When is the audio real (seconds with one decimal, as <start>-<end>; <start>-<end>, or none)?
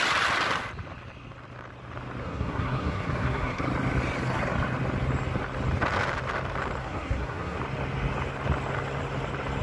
0.0-2.2; 3.6-6.8; 7.6-9.6